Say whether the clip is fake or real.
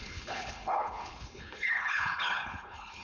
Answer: fake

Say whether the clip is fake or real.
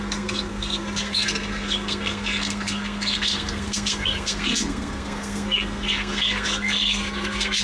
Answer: fake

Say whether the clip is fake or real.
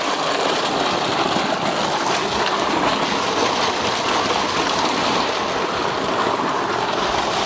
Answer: real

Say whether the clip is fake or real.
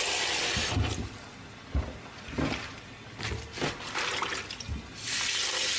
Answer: real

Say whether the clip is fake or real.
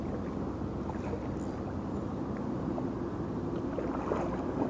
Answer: real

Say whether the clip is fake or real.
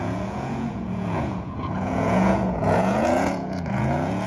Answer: fake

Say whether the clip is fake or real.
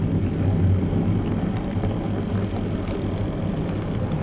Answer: real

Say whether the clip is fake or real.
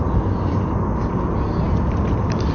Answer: real